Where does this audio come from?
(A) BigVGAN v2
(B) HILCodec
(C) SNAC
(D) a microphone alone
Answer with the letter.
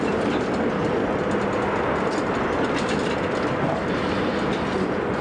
D